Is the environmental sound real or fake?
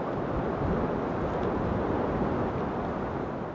real